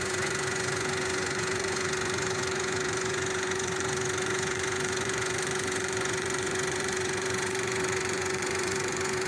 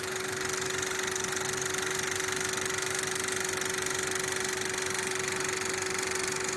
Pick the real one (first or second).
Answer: second